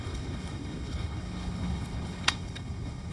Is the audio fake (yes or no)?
yes